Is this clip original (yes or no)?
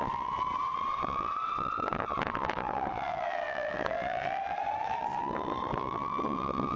no